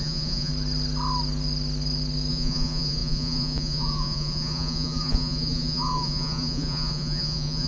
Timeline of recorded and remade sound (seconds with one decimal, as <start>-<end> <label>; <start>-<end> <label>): 0.0-0.5 remade; 0.5-2.3 recorded; 2.3-7.7 remade